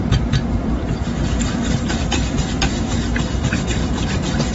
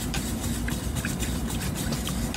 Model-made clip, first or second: first